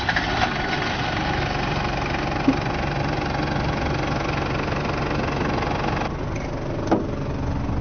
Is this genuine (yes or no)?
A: yes